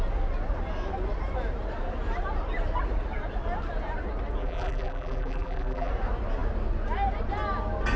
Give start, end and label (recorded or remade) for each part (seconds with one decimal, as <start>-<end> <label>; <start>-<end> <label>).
0.0-4.4 recorded; 4.4-5.9 remade; 5.9-8.0 recorded